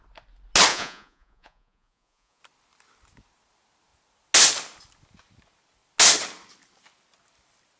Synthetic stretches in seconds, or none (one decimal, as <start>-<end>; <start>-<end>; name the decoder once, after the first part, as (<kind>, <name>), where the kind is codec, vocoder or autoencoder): 0.7-2.4 (vocoder, Vocos)